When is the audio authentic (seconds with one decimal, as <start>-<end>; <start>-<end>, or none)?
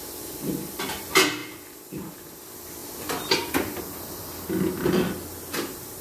0.0-6.0